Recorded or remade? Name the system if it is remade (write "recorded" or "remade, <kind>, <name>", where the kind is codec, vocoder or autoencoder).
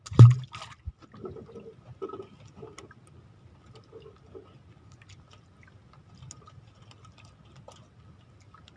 recorded